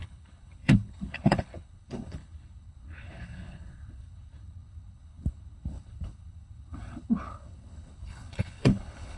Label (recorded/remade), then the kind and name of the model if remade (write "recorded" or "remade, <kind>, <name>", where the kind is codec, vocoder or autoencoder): remade, codec, HILCodec